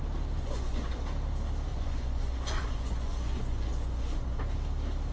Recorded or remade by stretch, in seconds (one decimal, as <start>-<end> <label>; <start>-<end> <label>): 0.0-0.4 recorded; 0.4-1.0 remade; 1.0-1.7 recorded; 1.7-4.4 remade; 4.4-5.1 recorded

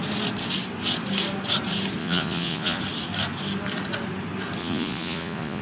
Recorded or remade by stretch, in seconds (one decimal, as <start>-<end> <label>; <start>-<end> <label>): 0.0-2.0 recorded; 2.0-2.8 remade; 2.8-4.6 recorded; 4.6-5.6 remade

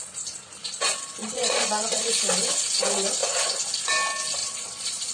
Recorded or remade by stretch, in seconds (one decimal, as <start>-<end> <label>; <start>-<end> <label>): 0.0-1.2 recorded; 1.2-2.1 remade; 2.1-4.4 recorded; 4.4-5.1 remade

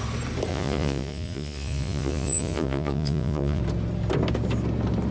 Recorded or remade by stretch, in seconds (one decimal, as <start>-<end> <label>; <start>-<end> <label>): 0.0-0.5 recorded; 0.5-3.6 remade; 3.6-5.1 recorded

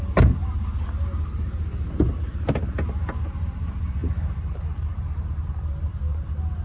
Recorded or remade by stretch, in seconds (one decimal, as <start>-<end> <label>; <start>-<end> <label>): 0.0-6.6 recorded

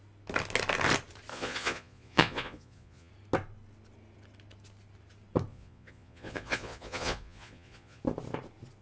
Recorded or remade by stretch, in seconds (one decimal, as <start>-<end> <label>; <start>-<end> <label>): 0.0-1.3 recorded; 1.3-3.1 remade; 3.1-5.5 recorded; 5.5-8.0 remade; 8.0-8.8 recorded